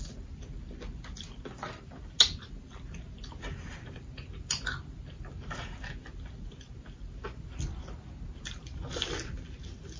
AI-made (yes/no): no